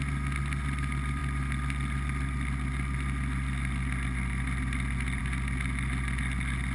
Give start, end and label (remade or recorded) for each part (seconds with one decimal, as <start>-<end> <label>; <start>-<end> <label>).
0.0-6.7 recorded